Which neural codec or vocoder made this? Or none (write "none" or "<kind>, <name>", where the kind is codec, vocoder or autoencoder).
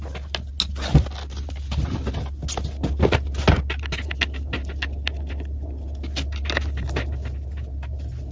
none